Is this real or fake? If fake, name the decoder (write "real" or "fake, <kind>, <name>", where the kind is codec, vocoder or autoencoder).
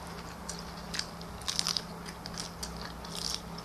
real